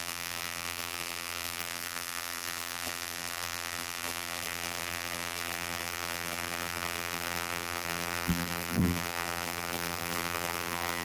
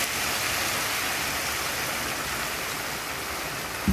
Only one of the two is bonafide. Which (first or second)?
second